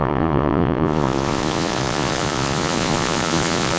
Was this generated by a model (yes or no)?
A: yes